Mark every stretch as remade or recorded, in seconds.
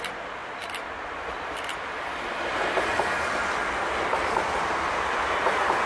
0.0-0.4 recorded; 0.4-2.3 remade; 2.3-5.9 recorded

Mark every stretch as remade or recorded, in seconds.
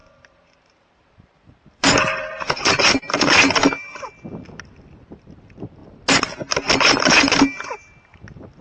0.0-3.2 remade; 3.2-8.6 recorded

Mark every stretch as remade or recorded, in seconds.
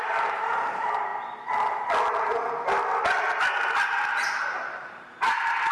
0.0-1.1 remade; 1.1-4.4 recorded; 4.4-5.7 remade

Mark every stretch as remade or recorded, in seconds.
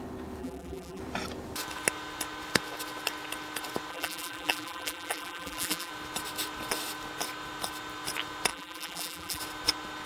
0.0-0.4 recorded; 0.4-1.0 remade; 1.0-3.9 recorded; 3.9-5.9 remade; 5.9-8.5 recorded; 8.5-9.4 remade; 9.4-10.1 recorded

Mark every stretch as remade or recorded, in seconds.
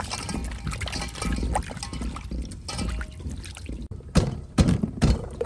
0.0-0.4 remade; 0.4-3.7 recorded; 3.7-5.5 remade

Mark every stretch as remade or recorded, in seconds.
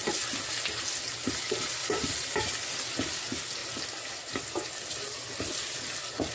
0.0-1.8 recorded; 1.8-2.4 remade; 2.4-6.3 recorded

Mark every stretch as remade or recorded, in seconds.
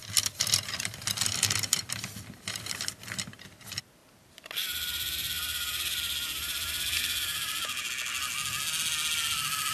0.0-2.1 remade; 2.1-4.0 recorded; 4.0-7.9 remade; 7.9-9.7 recorded